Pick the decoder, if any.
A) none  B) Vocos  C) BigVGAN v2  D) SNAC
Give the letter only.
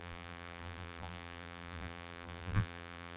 C